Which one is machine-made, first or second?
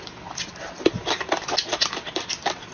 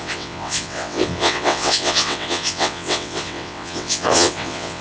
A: second